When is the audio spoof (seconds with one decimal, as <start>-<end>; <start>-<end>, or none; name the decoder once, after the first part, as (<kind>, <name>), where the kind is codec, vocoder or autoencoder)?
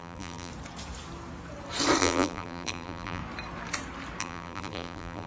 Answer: 0.0-0.5 (vocoder, BigVGAN v2); 2.0-3.2; 4.2-5.3